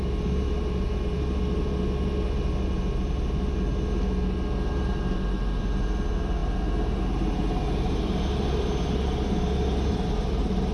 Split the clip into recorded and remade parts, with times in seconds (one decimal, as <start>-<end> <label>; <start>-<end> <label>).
0.0-10.7 recorded